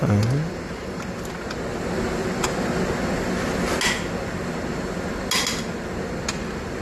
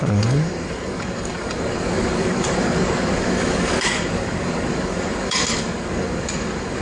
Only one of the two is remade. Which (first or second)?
second